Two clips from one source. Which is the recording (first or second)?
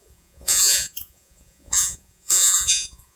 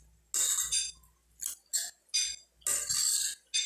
second